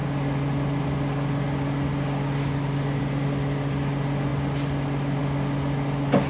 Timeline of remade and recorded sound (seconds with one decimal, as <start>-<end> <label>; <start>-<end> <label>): 0.0-6.3 recorded